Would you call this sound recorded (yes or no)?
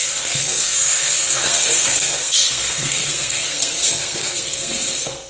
no